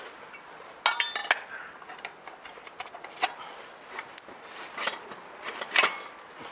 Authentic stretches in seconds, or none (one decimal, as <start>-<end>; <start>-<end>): 0.0-6.5